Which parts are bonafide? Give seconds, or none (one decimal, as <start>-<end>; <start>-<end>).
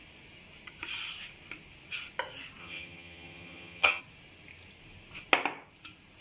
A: 0.0-2.6; 4.0-6.2